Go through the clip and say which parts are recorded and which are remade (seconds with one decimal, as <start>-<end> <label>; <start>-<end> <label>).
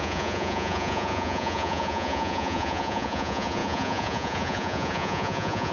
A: 0.0-5.7 remade